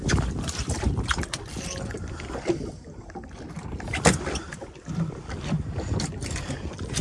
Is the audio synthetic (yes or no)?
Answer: yes